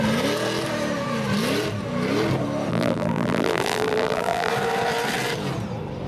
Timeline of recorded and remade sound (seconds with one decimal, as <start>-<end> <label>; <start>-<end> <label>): 0.0-2.7 recorded; 2.7-4.5 remade; 4.5-6.1 recorded